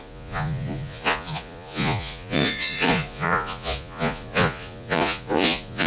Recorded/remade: remade